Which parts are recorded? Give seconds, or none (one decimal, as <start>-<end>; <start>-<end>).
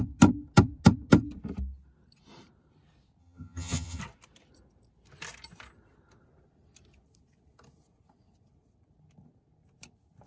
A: 0.0-3.2; 4.0-10.3